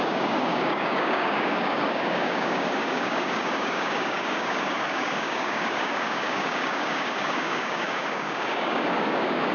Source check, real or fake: fake